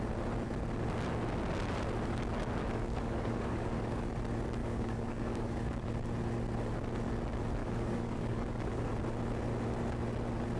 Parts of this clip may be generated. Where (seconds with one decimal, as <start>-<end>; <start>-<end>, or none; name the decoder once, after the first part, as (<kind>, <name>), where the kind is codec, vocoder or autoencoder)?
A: 2.6-4.1 (codec, DAC); 4.6-5.9; 7.6-8.9